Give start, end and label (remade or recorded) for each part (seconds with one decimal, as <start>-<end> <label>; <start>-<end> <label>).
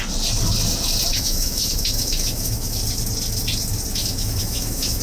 0.0-1.1 recorded; 1.1-2.8 remade; 2.8-4.0 recorded; 4.0-5.0 remade